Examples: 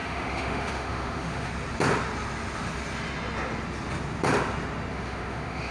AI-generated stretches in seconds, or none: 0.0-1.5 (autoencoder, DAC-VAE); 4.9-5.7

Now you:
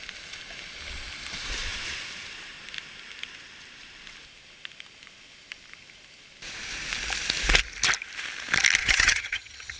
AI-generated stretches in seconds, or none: 8.8-9.8 (vocoder, HiFi-GAN)

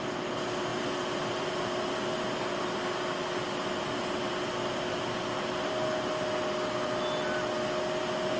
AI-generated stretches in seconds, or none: none

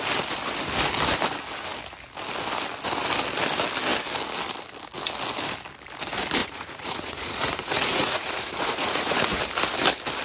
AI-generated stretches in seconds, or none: 6.4-9.4 (vocoder, Vocos)